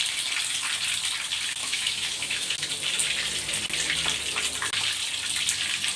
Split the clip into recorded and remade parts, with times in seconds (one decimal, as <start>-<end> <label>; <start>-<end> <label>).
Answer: 0.0-1.6 recorded; 1.6-2.7 remade; 2.7-6.0 recorded